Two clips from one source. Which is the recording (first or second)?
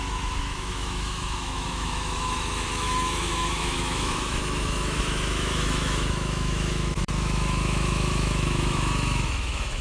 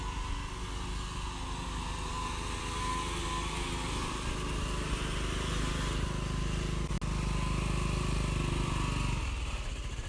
second